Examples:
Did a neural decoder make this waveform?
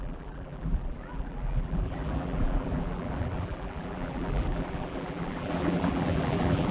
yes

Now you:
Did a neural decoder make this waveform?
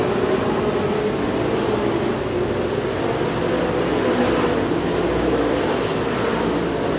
no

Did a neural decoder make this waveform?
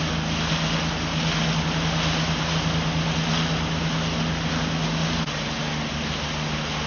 no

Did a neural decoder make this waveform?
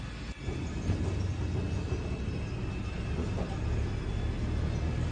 no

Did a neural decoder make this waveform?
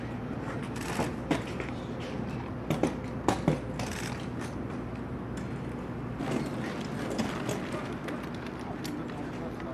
no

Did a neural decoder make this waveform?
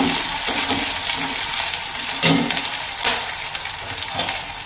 no